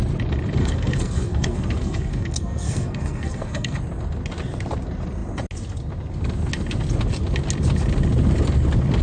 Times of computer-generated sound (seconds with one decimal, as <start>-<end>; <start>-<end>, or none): 0.6-3.8

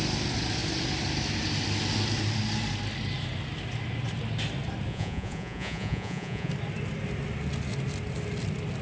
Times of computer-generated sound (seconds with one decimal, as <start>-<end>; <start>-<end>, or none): 4.9-6.5

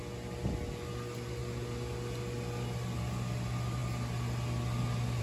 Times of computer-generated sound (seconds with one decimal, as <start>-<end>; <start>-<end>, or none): none

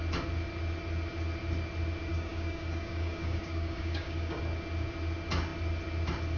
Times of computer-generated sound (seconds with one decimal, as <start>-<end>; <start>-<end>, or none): 2.1-4.4